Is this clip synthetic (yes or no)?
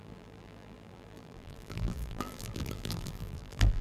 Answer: yes